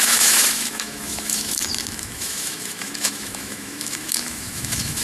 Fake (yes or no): yes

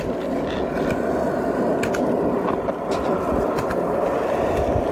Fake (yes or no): no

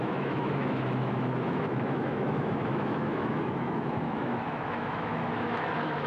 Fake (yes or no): yes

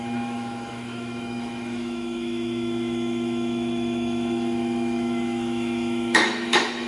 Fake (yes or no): yes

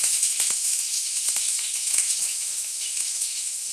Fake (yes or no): yes